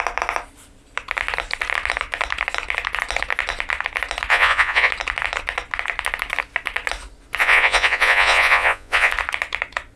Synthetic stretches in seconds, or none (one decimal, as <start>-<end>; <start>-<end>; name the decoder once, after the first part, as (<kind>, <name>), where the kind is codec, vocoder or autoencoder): 4.3-4.9 (vocoder, Vocos); 7.4-9.1